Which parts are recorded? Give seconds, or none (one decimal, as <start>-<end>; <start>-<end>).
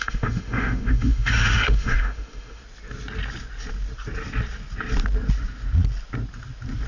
2.6-6.9